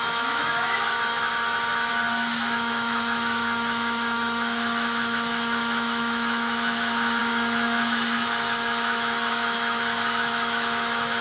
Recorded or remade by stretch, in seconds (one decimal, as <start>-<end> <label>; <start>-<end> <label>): 0.0-11.2 remade